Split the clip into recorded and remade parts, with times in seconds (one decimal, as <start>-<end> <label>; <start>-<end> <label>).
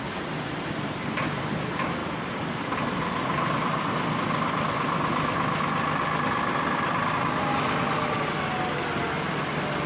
0.0-9.9 recorded